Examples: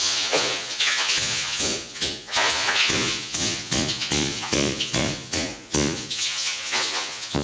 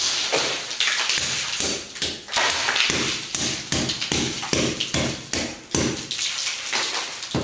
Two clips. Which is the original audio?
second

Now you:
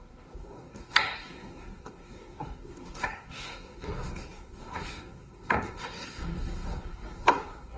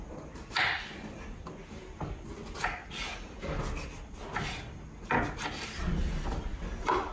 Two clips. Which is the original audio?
second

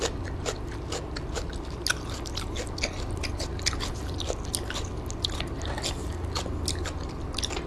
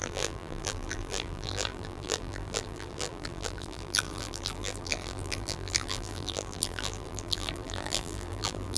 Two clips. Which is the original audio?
first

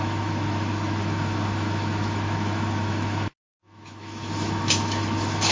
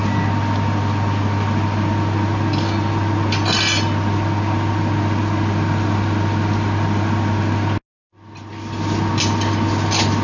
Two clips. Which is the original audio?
second